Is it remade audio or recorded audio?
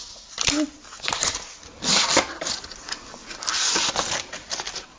recorded